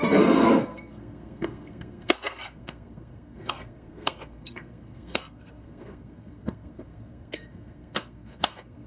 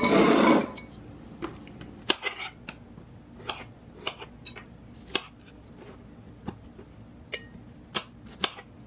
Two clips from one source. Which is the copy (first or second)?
first